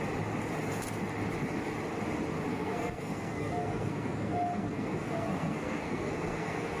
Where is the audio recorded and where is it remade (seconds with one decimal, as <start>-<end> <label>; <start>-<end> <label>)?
0.0-2.5 recorded; 2.5-6.8 remade

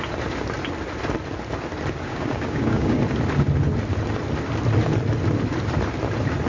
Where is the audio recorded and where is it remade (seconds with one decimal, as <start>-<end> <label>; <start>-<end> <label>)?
0.0-2.1 recorded; 2.1-3.0 remade; 3.0-6.5 recorded

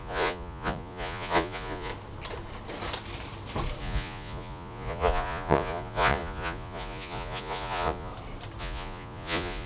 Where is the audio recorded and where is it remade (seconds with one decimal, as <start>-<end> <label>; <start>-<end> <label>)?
0.0-1.9 remade; 1.9-3.8 recorded; 3.8-8.1 remade; 8.1-8.6 recorded; 8.6-9.7 remade

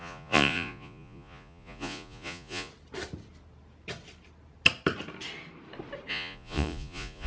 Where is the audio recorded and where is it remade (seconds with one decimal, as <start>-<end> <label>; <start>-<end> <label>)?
0.0-2.7 remade; 2.7-6.1 recorded; 6.1-7.3 remade

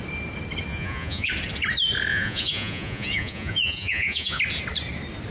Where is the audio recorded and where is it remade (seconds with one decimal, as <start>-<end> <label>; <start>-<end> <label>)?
0.0-0.7 recorded; 0.7-1.3 remade; 1.3-2.1 recorded; 2.1-4.4 remade; 4.4-5.3 recorded

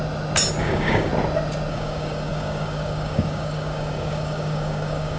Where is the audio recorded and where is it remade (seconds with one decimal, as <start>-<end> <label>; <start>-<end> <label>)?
0.0-0.6 recorded; 0.6-1.1 remade; 1.1-1.7 recorded; 1.7-5.2 remade

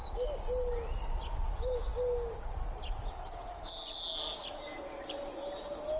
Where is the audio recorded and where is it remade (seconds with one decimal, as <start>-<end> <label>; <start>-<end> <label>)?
0.0-6.0 recorded

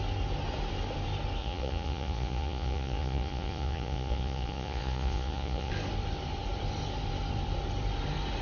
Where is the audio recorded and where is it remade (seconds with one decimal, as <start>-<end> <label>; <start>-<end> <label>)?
0.0-1.4 recorded; 1.4-5.7 remade; 5.7-8.4 recorded